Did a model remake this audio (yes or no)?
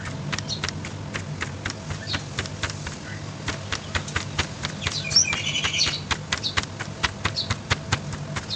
no